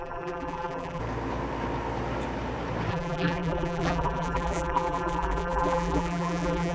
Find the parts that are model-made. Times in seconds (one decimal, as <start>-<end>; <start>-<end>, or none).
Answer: 0.0-1.0; 2.9-6.7